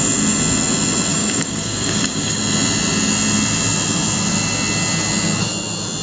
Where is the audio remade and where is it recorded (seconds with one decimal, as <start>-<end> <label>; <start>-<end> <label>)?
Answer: 0.0-1.1 recorded; 1.1-2.4 remade; 2.4-6.0 recorded